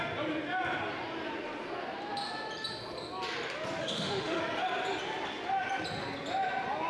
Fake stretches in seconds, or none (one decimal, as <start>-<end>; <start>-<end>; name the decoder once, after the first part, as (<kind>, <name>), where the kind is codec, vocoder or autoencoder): 3.8-4.4 (autoencoder, DAC-VAE)